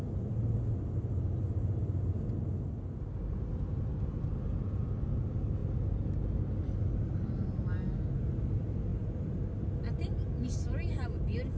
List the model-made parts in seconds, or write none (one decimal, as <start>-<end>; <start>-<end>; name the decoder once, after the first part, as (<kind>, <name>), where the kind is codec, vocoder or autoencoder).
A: none